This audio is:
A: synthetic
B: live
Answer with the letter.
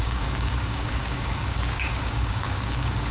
A